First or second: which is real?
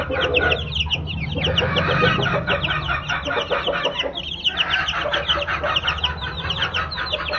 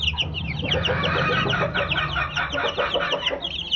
first